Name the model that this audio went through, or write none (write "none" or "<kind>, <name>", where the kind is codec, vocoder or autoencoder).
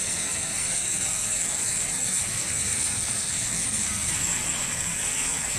codec, SNAC